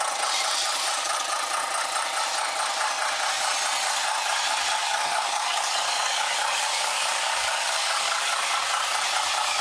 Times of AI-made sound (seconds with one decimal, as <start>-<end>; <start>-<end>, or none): 4.8-8.6